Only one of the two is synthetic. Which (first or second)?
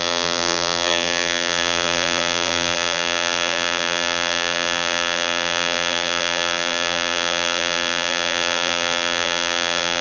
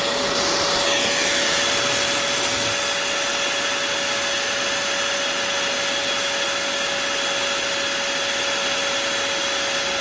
first